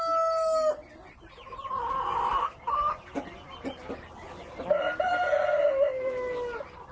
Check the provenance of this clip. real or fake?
real